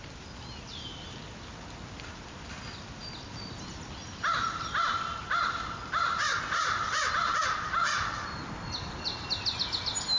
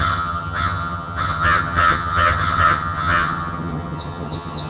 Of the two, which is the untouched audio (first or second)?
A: first